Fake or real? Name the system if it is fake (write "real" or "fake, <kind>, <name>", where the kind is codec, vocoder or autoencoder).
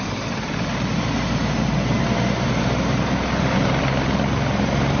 real